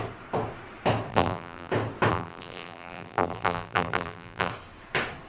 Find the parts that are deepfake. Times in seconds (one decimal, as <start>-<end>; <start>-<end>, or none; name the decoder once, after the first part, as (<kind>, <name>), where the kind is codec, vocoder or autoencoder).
1.1-1.7 (vocoder, BigVGAN v2); 2.1-4.5